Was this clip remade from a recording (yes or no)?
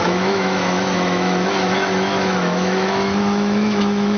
yes